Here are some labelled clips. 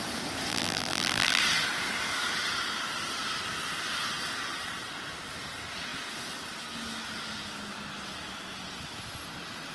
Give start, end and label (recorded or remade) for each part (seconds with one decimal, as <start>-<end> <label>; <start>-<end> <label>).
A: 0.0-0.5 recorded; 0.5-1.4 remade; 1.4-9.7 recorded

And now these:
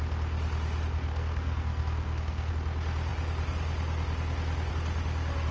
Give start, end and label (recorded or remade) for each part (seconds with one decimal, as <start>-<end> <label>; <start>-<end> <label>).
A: 0.0-1.1 recorded; 1.1-2.5 remade; 2.5-5.5 recorded

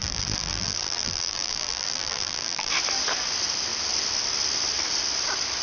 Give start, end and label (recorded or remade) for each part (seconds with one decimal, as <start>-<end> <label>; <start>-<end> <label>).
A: 0.0-2.7 remade; 2.7-5.6 recorded

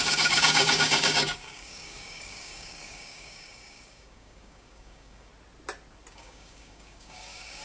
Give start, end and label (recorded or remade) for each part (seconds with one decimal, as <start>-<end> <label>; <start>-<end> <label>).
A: 0.0-5.3 remade; 5.3-6.1 recorded; 6.1-7.6 remade

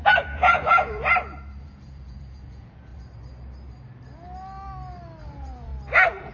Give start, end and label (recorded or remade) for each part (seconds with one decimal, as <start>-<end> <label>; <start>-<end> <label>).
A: 0.0-1.0 remade; 1.0-1.6 recorded; 1.6-2.9 remade; 2.9-5.2 recorded; 5.2-5.7 remade; 5.7-6.3 recorded

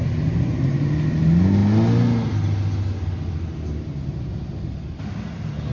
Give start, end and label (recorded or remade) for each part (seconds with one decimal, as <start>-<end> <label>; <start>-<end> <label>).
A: 0.0-5.7 recorded

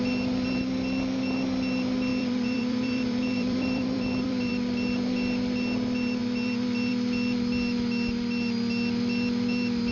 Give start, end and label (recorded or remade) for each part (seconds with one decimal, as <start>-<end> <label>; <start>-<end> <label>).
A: 0.0-2.1 recorded; 2.1-4.5 remade; 4.5-9.9 recorded